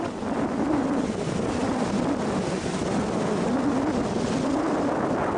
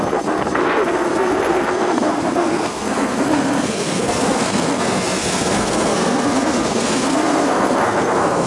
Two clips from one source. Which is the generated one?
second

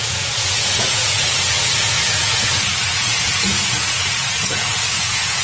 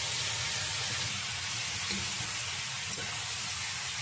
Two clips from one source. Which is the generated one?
first